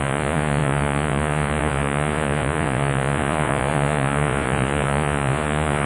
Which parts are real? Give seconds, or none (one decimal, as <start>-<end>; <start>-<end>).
none